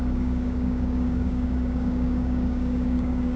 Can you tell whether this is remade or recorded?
remade